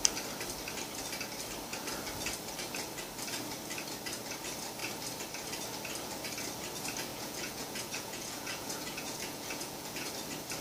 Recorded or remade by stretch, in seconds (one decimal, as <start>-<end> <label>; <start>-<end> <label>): 0.0-7.1 recorded; 7.1-10.1 remade; 10.1-10.6 recorded